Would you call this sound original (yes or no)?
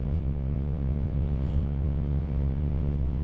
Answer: no